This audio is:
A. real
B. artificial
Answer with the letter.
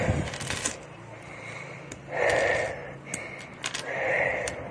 A